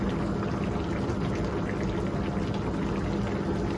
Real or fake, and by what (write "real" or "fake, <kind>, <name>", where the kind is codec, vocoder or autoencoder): real